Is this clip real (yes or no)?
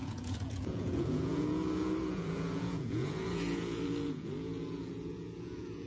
no